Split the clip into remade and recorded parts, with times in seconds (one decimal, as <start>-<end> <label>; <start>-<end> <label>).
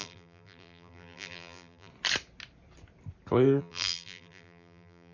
0.0-1.9 remade; 1.9-3.6 recorded; 3.6-5.1 remade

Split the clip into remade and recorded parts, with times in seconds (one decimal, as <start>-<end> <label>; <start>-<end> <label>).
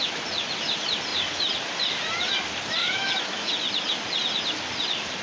0.0-2.8 recorded; 2.8-3.5 remade; 3.5-5.2 recorded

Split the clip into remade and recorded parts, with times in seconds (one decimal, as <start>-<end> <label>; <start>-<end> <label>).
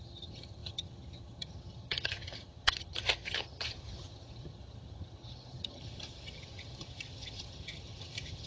0.0-8.5 remade